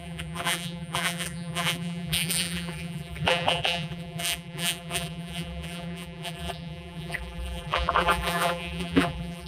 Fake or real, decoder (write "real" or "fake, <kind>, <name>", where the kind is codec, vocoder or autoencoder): fake, vocoder, BigVGAN v2